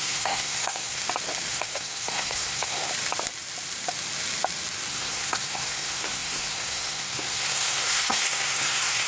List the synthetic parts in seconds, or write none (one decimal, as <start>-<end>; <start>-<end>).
0.0-1.0; 1.5-2.9; 4.9-9.1